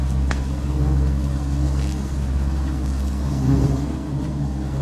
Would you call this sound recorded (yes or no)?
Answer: no